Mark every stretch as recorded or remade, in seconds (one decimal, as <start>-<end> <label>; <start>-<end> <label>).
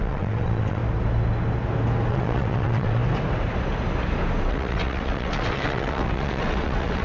0.0-0.8 remade; 0.8-2.1 recorded; 2.1-3.0 remade; 3.0-4.4 recorded; 4.4-7.0 remade